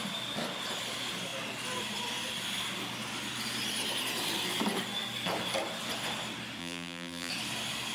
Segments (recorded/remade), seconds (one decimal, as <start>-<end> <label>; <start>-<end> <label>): 0.0-6.6 recorded; 6.6-7.3 remade; 7.3-7.9 recorded